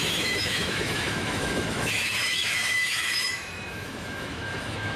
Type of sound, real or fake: fake